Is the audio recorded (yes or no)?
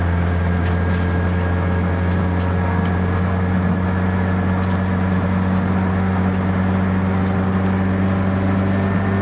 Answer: yes